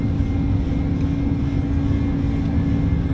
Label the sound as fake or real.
real